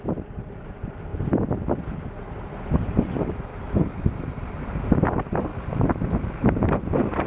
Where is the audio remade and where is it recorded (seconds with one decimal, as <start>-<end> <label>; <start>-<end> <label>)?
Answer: 0.0-1.1 remade; 1.1-2.6 recorded; 2.6-5.5 remade; 5.5-6.3 recorded; 6.3-7.3 remade

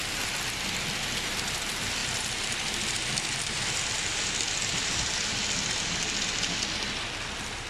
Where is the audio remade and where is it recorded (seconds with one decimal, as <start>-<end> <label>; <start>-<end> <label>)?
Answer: 0.0-2.0 recorded; 2.0-6.6 remade; 6.6-7.7 recorded

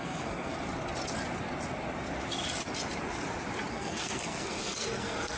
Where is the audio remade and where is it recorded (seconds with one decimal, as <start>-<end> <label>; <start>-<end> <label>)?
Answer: 0.0-0.5 remade; 0.5-3.7 recorded; 3.7-5.4 remade

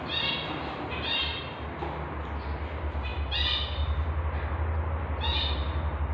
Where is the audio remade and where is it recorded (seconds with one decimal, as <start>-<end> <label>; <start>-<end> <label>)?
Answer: 0.0-6.1 recorded